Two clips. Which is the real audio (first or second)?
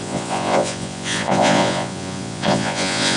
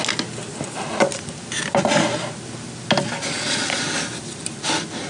second